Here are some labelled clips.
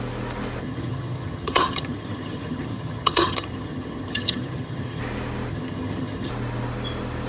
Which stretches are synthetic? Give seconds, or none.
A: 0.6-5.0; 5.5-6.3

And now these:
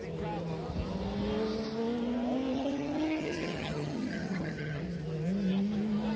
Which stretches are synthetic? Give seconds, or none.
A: 2.5-4.8